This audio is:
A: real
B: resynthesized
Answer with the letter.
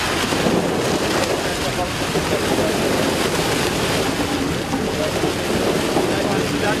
A